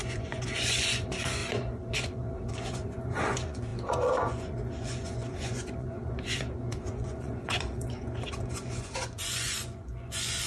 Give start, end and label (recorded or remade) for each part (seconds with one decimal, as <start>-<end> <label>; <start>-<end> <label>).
0.0-10.5 remade